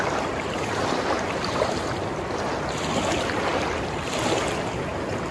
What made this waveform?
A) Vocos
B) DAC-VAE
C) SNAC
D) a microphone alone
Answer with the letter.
D